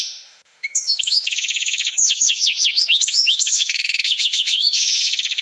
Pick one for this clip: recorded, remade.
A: remade